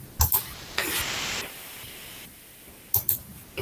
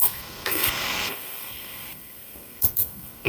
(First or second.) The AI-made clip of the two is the second